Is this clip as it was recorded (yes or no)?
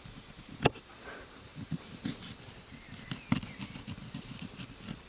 no